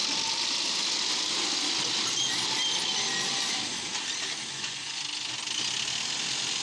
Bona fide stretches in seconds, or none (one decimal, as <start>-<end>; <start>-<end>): 0.0-4.5; 5.0-6.6